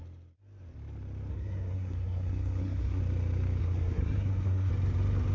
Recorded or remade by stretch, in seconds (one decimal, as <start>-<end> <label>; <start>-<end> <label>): 0.0-1.3 recorded; 1.3-3.0 remade; 3.0-3.6 recorded; 3.6-4.7 remade; 4.7-5.3 recorded